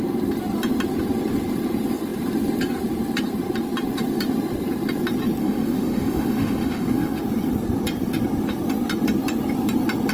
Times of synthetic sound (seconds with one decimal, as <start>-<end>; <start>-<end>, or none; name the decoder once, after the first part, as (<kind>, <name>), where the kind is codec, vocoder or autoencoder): 5.4-7.2 (autoencoder, DAC-VAE)